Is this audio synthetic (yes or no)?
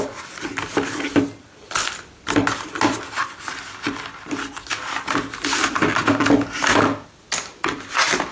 no